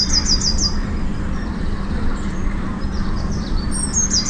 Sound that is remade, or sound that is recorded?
remade